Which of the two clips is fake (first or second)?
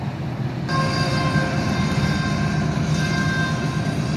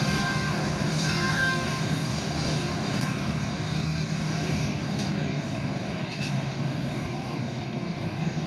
second